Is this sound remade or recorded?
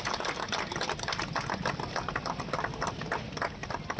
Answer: recorded